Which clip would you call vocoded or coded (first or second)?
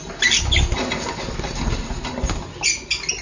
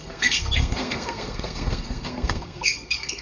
second